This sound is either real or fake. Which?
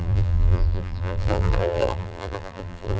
fake